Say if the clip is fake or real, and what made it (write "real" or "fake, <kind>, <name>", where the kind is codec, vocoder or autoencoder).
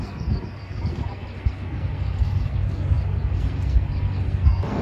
fake, codec, SNAC